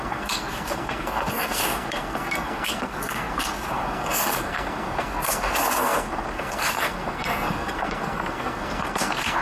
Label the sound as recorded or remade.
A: remade